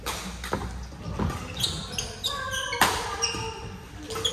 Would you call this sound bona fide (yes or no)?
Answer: yes